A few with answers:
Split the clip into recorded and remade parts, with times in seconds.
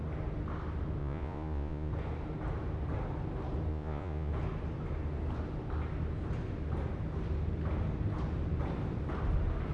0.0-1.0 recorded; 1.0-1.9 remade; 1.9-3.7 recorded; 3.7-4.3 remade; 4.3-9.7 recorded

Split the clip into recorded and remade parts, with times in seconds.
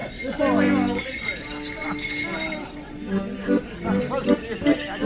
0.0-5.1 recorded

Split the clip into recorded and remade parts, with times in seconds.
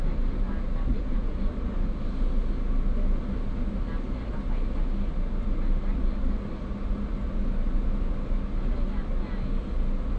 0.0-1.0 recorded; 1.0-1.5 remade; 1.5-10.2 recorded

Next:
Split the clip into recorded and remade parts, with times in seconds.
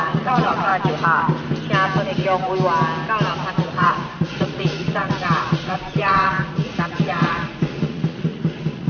0.0-0.7 remade; 0.7-3.5 recorded; 3.5-8.9 remade